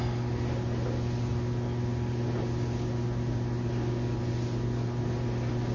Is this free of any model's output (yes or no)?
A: yes